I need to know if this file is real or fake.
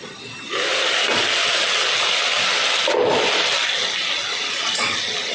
real